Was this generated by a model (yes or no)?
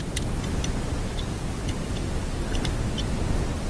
no